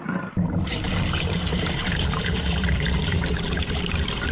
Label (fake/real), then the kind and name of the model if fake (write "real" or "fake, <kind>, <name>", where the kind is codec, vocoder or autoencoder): fake, vocoder, BigVGAN v2